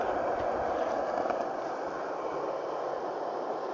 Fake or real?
real